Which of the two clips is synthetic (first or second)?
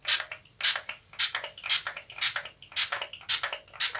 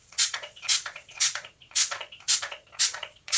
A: second